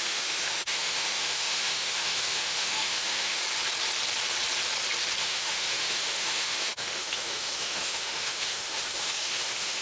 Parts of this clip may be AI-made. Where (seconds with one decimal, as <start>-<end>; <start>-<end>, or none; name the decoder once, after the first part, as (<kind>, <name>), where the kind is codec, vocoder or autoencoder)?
0.0-3.4 (autoencoder, DAC-VAE); 5.2-9.8